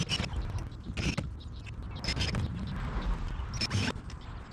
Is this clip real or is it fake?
real